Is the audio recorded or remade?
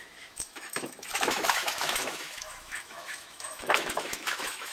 remade